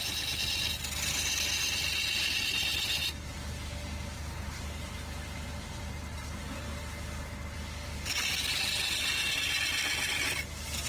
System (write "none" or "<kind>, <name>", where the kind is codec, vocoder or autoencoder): none